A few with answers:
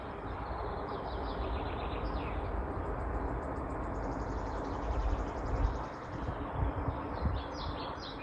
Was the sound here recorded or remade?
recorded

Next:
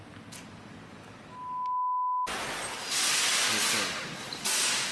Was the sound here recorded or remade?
recorded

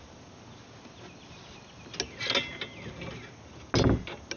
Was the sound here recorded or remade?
recorded